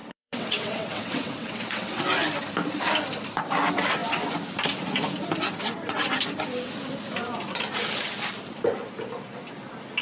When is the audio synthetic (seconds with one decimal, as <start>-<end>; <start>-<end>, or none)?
0.0-2.0